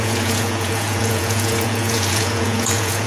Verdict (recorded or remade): remade